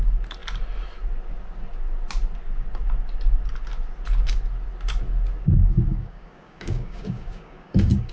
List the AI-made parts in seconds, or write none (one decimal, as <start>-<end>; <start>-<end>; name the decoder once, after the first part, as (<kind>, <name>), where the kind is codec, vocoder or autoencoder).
5.9-8.1 (codec, DAC)